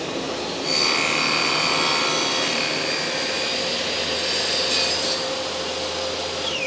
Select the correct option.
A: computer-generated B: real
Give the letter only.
B